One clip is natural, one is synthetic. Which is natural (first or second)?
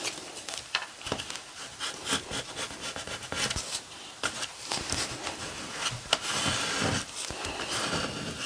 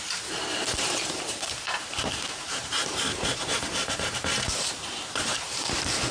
first